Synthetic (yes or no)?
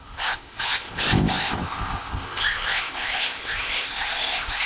yes